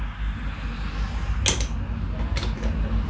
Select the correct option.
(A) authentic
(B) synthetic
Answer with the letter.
A